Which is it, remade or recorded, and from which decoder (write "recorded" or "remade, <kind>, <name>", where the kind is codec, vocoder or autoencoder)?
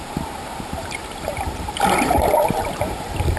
remade, vocoder, BigVGAN v2